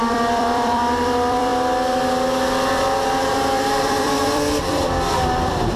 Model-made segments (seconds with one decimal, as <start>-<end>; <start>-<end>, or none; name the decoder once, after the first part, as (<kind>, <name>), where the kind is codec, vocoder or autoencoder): 0.0-1.5 (vocoder, BigVGAN v2); 3.3-5.8